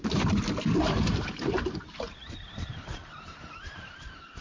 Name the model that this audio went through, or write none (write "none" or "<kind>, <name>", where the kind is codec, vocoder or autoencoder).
vocoder, BigVGAN v2